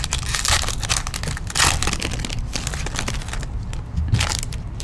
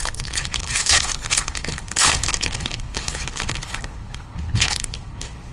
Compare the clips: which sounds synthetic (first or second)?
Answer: second